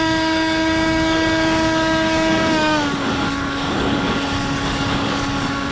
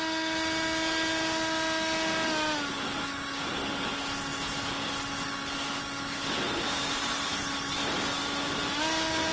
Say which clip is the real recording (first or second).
second